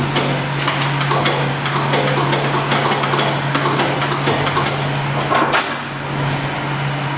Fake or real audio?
real